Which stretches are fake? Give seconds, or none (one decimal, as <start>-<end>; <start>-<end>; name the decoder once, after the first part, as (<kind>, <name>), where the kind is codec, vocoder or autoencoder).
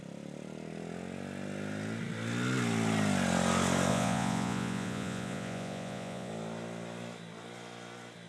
3.9-6.3 (vocoder, Vocos)